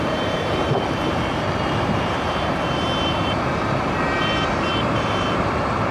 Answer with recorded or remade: remade